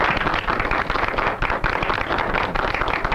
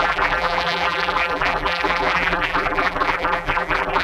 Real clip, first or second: first